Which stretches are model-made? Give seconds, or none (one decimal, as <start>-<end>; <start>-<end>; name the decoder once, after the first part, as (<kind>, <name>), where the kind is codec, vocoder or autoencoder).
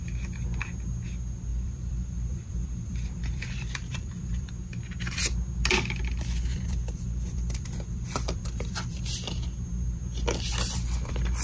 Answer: 1.5-4.5 (vocoder, BigVGAN v2); 6.5-9.0